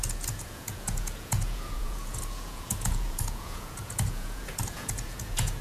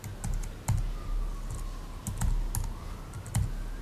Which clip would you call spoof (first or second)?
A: first